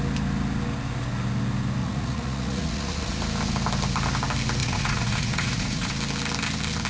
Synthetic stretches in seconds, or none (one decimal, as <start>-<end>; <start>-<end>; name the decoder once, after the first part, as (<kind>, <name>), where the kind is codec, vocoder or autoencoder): 1.8-3.1 (vocoder, Vocos); 4.6-5.9